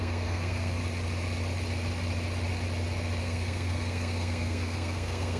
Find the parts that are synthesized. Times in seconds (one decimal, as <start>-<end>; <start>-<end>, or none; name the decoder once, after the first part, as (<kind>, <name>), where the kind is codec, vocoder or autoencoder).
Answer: 0.0-0.8 (codec, SNAC); 3.2-5.4